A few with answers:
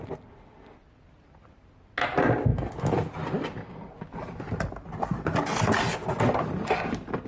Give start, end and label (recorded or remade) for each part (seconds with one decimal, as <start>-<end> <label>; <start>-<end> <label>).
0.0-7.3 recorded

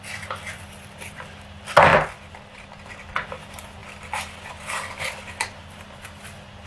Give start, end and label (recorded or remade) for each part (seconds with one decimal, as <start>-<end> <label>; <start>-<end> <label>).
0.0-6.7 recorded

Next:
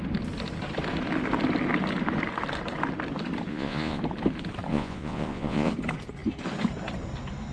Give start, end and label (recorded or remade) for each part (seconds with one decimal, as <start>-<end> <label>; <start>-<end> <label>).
0.0-3.5 recorded; 3.5-4.0 remade; 4.0-4.7 recorded; 4.7-5.7 remade; 5.7-7.5 recorded

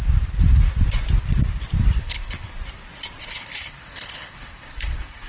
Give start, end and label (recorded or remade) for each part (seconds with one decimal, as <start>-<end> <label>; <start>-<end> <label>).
0.0-2.0 recorded; 2.0-2.5 remade; 2.5-3.2 recorded; 3.2-5.3 remade

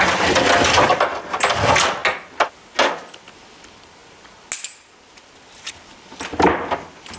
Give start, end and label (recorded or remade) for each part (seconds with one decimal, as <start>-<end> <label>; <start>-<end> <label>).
0.0-7.2 recorded

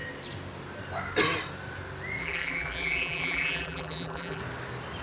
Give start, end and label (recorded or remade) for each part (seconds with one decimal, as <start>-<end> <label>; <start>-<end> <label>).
0.0-2.2 recorded; 2.2-4.4 remade; 4.4-5.0 recorded